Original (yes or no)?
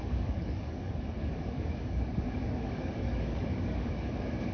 no